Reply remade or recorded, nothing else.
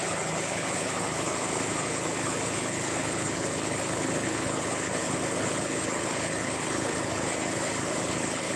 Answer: remade